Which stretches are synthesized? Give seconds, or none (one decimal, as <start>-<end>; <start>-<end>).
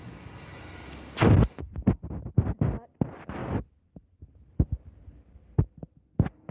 none